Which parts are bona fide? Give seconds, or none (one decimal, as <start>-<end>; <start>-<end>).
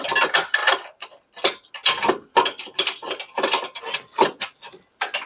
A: 0.0-5.3